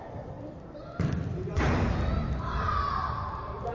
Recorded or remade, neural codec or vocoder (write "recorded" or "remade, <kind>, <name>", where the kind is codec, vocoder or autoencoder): remade, vocoder, BigVGAN v2